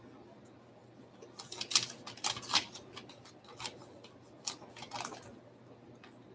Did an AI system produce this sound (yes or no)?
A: no